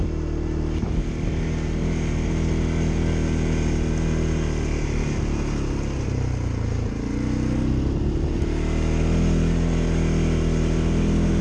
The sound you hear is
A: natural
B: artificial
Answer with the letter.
A